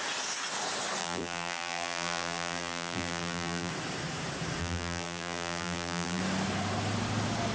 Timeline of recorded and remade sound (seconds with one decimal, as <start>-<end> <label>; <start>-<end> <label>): 0.0-1.0 recorded; 1.0-3.7 remade; 3.7-4.6 recorded; 4.6-6.2 remade; 6.2-7.5 recorded